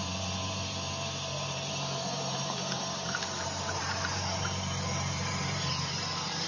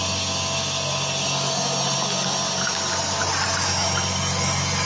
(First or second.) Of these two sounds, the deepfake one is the first